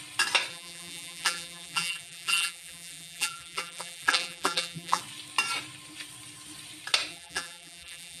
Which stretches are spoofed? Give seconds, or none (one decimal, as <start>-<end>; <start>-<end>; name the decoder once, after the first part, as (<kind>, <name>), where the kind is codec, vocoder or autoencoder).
0.5-5.0 (vocoder, BigVGAN v2); 7.1-8.2